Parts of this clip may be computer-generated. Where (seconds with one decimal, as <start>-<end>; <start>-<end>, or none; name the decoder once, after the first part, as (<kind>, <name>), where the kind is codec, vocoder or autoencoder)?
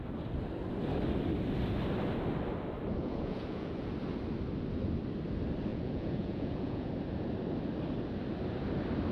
3.0-3.9 (vocoder, Vocos); 5.7-6.9